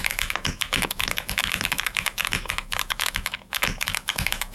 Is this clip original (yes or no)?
no